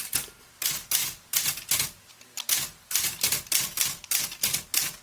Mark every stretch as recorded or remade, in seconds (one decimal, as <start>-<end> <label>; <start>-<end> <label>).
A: 0.0-5.0 recorded